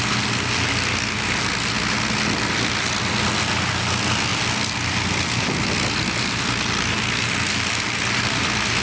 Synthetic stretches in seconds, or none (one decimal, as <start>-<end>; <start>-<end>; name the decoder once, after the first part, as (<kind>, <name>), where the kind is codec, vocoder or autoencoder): none